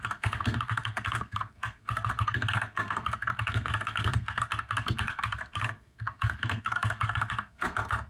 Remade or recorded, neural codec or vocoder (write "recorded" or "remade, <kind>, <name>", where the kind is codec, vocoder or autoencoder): remade, codec, SNAC